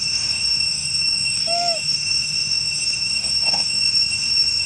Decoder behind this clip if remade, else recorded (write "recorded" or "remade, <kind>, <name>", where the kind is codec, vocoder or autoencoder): remade, autoencoder, DAC-VAE